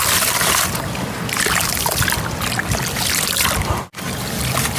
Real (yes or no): yes